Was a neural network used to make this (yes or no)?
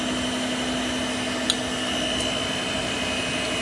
no